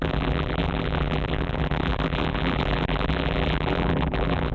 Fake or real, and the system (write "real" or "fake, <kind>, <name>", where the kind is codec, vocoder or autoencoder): fake, vocoder, BigVGAN v2